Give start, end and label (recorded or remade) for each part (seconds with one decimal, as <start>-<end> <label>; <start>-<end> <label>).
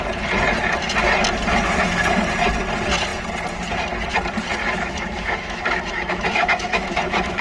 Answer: 0.0-4.6 recorded; 4.6-7.4 remade